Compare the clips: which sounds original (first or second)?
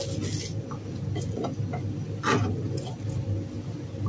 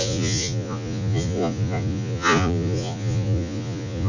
first